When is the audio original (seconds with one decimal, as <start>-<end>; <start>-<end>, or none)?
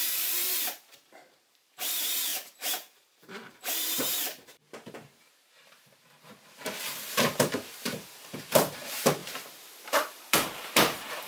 none